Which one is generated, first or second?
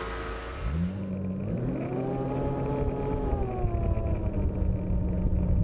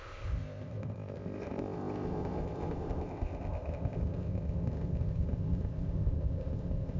second